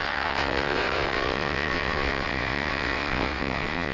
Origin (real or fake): fake